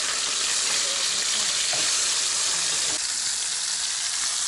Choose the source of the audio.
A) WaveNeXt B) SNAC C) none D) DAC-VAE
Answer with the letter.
C